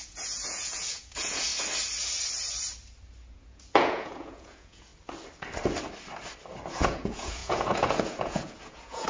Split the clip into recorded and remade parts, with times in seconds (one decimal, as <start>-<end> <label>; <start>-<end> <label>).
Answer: 0.0-1.5 remade; 1.5-3.3 recorded; 3.3-4.9 remade; 4.9-6.7 recorded; 6.7-9.1 remade